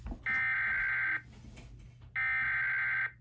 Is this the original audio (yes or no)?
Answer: yes